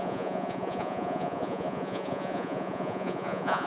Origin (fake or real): fake